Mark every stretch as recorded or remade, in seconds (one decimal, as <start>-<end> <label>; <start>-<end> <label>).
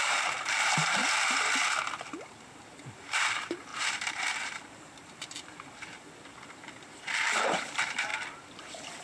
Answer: 0.0-1.0 remade; 1.0-2.4 recorded; 2.4-8.1 remade; 8.1-8.6 recorded; 8.6-9.0 remade